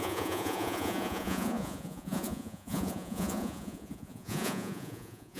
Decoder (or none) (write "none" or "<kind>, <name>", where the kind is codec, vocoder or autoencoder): vocoder, Vocos